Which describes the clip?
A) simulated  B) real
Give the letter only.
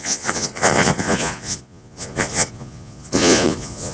A